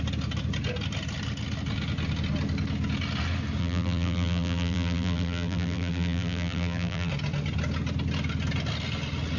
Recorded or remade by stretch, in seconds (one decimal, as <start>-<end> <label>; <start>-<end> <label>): 0.0-3.6 recorded; 3.6-7.1 remade; 7.1-9.4 recorded